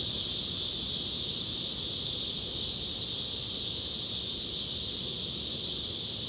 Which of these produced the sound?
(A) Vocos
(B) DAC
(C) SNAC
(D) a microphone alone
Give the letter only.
D